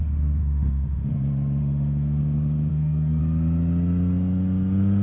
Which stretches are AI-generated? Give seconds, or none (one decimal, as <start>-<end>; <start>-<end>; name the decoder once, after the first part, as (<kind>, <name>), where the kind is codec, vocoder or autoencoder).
0.4-1.1 (autoencoder, DAC-VAE); 1.6-2.2; 2.7-3.2